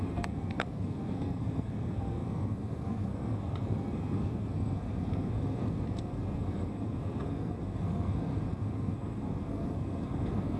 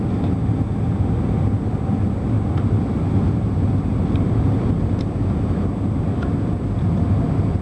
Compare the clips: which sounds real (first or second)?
second